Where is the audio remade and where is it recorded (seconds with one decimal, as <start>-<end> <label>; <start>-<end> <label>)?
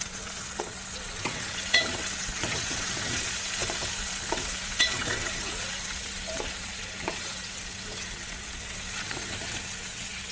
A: 0.0-10.3 remade